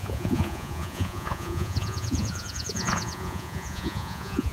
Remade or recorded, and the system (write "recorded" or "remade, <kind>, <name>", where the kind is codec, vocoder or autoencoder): remade, vocoder, Vocos